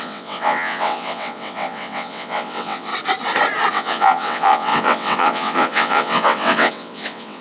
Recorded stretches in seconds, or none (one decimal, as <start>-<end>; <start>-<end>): 2.9-3.7